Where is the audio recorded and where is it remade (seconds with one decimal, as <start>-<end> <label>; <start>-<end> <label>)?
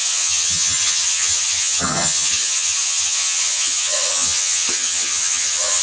0.0-5.8 remade